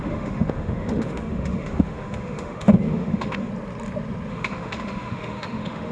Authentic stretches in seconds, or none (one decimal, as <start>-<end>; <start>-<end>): 3.5-4.3